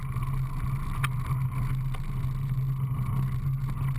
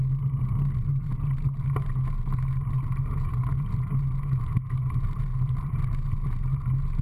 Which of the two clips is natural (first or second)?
first